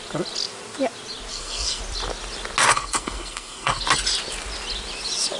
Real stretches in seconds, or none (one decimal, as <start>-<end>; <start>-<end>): 0.0-1.3; 1.8-2.7; 3.8-5.4